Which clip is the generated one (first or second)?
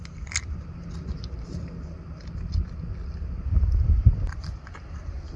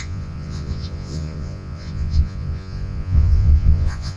second